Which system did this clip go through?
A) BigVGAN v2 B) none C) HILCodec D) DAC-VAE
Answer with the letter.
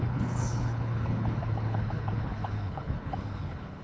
C